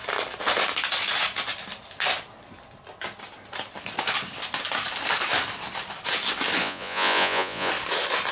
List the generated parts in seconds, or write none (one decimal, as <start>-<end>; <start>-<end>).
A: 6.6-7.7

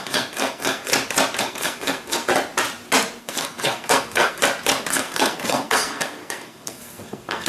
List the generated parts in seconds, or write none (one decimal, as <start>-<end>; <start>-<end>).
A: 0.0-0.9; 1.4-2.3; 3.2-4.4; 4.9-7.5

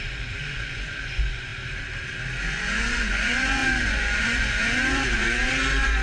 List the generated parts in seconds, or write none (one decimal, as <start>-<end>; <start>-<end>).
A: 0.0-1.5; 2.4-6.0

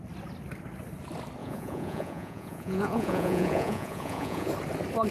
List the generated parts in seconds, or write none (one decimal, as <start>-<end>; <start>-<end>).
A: 1.4-4.5

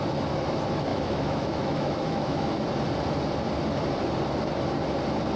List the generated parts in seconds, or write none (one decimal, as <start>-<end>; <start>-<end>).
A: 0.9-2.5